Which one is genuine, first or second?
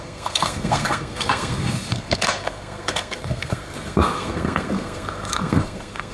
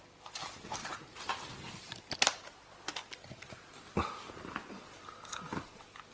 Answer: second